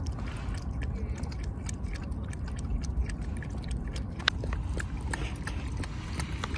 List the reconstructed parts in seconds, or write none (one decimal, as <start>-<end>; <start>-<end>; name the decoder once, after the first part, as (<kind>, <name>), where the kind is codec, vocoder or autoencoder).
none